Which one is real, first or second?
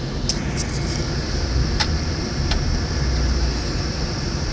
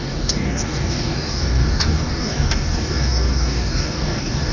first